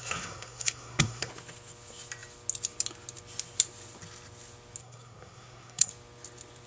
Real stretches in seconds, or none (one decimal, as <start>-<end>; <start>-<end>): 1.3-4.8; 5.9-6.7